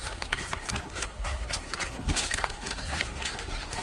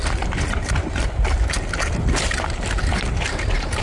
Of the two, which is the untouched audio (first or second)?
second